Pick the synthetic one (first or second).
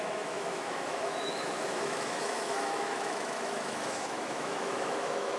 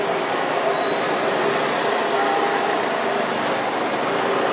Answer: first